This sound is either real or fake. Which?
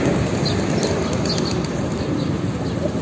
real